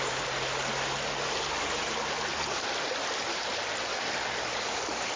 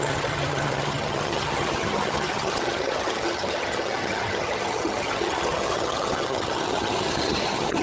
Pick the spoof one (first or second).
second